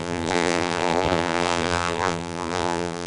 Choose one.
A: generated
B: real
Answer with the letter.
A